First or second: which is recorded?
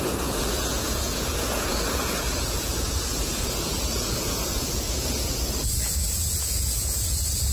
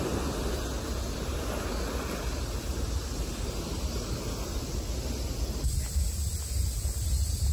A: second